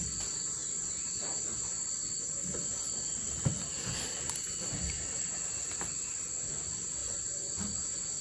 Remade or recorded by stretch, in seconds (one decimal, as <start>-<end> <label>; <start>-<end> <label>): 0.0-8.2 recorded